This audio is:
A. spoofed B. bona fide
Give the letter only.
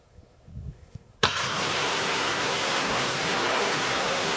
A